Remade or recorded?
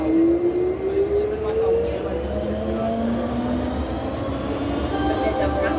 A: recorded